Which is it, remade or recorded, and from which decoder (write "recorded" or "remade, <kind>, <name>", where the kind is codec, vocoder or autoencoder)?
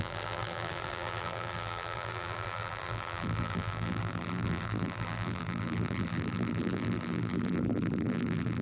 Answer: remade, vocoder, BigVGAN v2